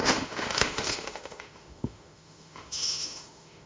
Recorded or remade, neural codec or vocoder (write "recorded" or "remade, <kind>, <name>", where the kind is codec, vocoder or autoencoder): remade, autoencoder, DAC-VAE